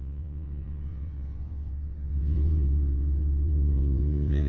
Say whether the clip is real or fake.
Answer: fake